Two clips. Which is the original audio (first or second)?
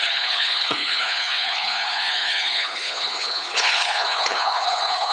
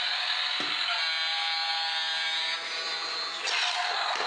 second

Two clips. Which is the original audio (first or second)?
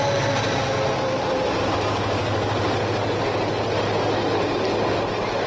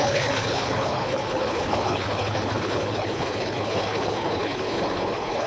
first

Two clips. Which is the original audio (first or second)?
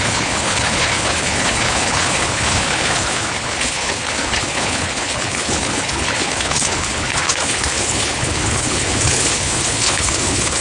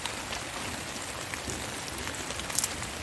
second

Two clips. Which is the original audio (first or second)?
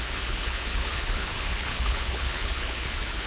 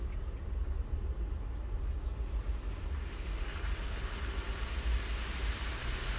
second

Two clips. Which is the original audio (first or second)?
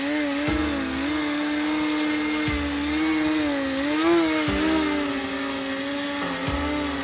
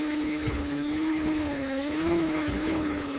first